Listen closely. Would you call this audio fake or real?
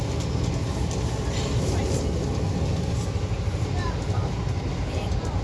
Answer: real